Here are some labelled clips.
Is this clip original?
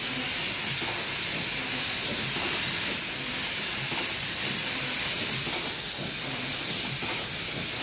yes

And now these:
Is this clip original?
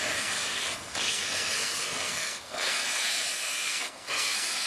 no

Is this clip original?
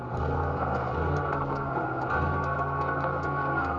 no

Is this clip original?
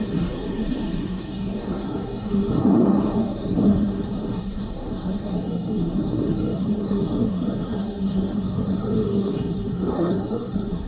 no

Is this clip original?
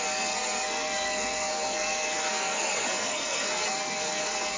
no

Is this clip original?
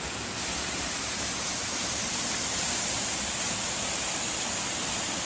yes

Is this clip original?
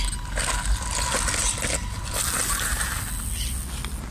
yes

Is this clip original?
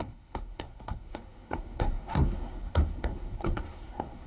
no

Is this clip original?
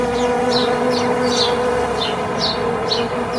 yes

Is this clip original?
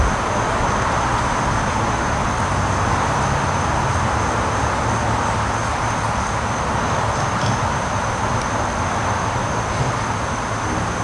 yes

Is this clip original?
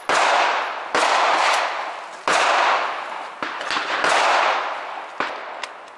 yes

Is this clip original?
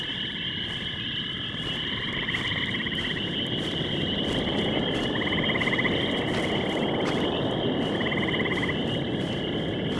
yes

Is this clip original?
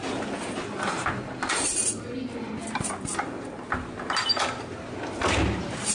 yes